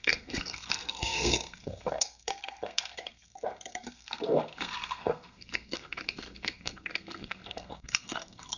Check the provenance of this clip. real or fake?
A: fake